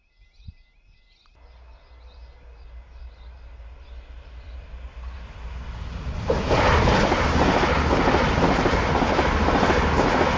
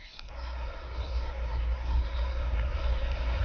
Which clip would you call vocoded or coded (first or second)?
second